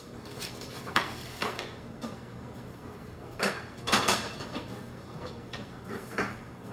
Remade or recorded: remade